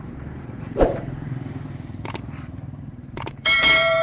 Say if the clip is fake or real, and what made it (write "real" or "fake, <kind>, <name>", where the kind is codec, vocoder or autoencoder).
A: fake, vocoder, BigVGAN v2